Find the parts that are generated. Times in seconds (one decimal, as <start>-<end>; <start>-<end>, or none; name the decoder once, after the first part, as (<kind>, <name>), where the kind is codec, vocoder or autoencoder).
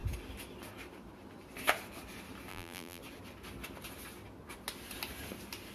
2.5-3.0 (vocoder, BigVGAN v2)